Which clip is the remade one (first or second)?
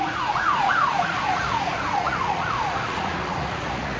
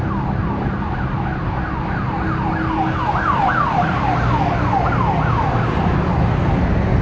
first